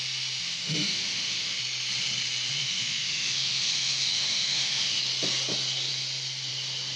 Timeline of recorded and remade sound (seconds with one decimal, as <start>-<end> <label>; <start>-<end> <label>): 0.0-0.4 recorded; 0.4-1.6 remade; 1.6-2.6 recorded; 2.6-5.0 remade; 5.0-7.0 recorded